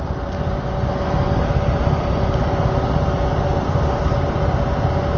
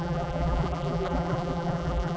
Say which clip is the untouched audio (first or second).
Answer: first